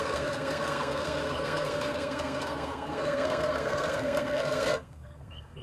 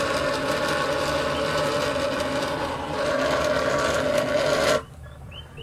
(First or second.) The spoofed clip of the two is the first